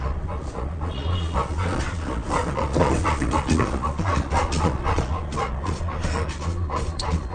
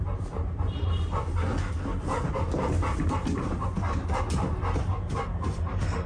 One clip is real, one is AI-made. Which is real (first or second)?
second